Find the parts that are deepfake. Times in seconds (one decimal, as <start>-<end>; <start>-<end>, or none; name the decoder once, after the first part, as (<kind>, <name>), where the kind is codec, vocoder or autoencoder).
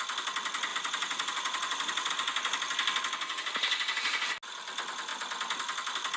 0.7-2.1 (vocoder, Vocos)